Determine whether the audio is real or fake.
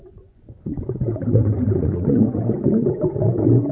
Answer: fake